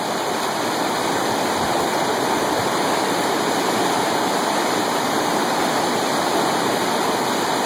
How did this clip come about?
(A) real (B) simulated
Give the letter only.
B